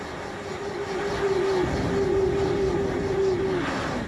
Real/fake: real